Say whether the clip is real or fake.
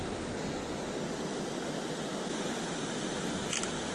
real